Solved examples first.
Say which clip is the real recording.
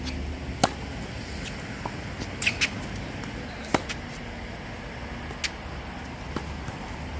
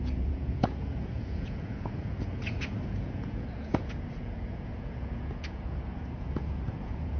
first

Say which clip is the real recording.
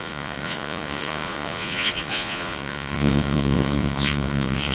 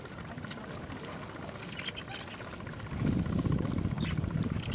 second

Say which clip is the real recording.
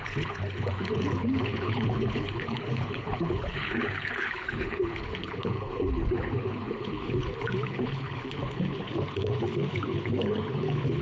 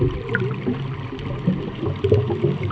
second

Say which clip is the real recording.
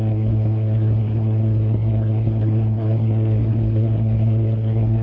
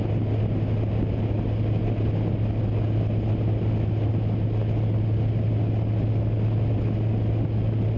second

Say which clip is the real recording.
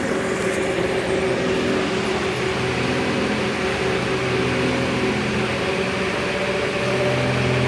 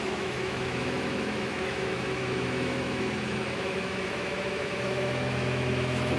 first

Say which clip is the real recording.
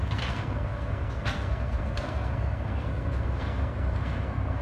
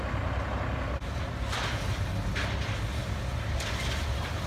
second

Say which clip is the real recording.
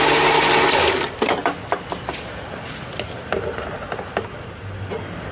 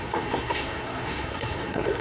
first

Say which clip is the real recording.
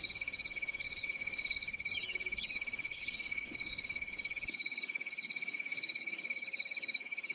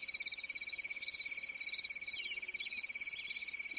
second